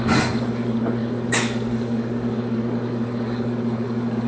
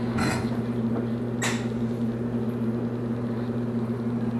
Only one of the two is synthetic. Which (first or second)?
first